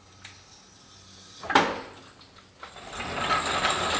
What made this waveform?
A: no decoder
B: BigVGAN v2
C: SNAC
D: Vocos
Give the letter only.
A